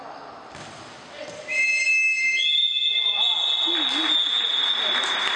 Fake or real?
real